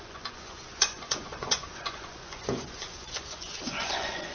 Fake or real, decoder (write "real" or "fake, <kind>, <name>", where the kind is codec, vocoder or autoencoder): fake, vocoder, Vocos